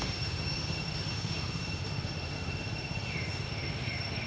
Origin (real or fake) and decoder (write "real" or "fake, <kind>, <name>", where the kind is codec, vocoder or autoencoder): fake, autoencoder, DAC-VAE